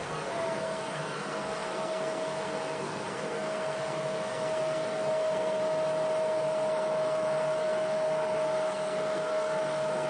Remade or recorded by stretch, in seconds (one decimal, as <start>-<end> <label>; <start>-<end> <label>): 0.0-5.6 remade; 5.6-6.2 recorded; 6.2-10.1 remade